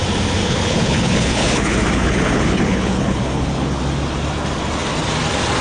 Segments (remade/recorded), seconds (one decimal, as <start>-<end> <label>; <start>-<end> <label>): 0.0-0.4 recorded; 0.4-3.8 remade; 3.8-5.6 recorded